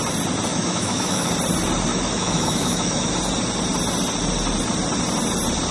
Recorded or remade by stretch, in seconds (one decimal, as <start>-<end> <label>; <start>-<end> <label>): 0.0-0.5 recorded; 0.5-1.3 remade; 1.3-1.9 recorded; 1.9-3.1 remade; 3.1-5.7 recorded